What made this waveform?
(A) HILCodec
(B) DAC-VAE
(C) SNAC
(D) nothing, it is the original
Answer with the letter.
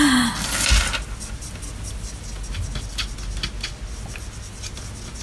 D